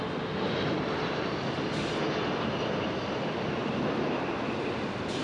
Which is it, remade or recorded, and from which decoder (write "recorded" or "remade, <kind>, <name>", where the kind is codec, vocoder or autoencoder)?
recorded